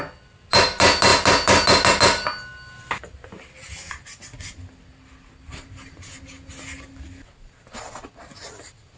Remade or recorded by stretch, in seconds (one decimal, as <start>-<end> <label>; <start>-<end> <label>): 0.0-9.0 recorded